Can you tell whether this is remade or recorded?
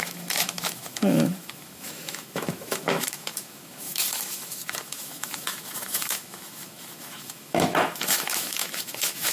remade